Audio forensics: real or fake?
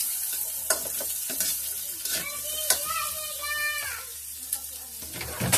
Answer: real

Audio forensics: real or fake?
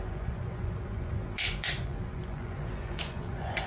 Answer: fake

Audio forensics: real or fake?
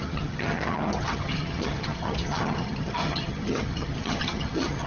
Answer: fake